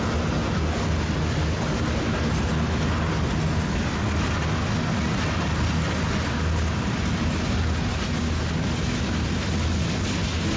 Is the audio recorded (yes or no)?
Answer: yes